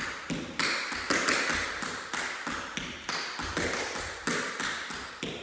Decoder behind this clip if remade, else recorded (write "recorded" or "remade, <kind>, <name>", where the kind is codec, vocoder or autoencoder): recorded